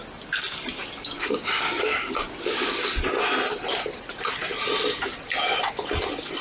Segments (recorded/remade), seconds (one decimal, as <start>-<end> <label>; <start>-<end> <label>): 0.0-0.8 recorded; 0.8-2.9 remade; 2.9-6.4 recorded